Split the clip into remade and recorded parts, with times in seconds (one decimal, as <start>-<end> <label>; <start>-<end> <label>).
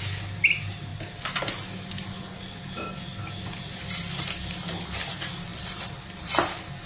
0.0-6.9 recorded